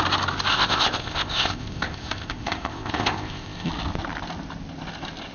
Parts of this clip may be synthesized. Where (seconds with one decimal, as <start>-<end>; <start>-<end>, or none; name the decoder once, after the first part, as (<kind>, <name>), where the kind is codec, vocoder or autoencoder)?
0.5-3.7 (codec, ZipCodec)

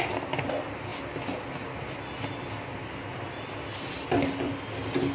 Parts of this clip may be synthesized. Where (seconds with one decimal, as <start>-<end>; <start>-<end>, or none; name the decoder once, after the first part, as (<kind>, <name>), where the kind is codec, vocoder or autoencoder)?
none

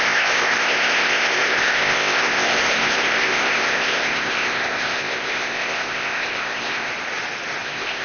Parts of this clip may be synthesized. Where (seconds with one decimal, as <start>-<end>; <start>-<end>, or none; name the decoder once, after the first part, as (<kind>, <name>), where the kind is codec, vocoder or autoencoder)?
0.0-6.9 (codec, ZipCodec); 7.6-8.0

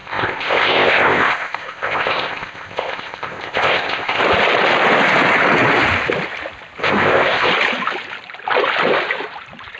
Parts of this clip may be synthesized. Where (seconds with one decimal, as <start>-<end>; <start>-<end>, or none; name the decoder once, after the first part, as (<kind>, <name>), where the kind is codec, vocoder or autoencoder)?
0.0-4.2 (codec, ZipCodec); 6.8-7.5

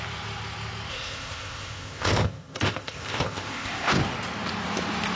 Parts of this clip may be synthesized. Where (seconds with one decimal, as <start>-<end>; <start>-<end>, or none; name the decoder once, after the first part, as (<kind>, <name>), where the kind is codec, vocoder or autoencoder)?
0.9-4.0 (codec, ZipCodec)

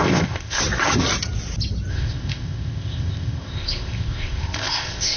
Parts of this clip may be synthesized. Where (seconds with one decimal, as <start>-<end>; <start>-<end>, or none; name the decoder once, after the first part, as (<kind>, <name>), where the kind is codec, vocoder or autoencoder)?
0.0-0.6 (codec, ZipCodec); 1.9-5.2

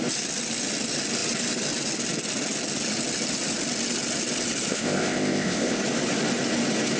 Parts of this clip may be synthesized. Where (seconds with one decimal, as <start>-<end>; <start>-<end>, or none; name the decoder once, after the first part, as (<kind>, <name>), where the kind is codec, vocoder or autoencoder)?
4.7-5.8 (codec, ZipCodec)